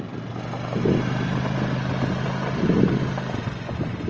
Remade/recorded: recorded